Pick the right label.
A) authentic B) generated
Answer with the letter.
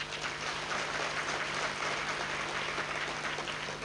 A